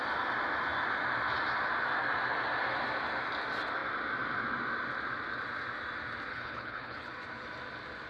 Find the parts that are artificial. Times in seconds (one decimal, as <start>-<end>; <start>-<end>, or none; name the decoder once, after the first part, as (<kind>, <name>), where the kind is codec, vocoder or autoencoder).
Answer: 6.3-7.1 (codec, HILCodec)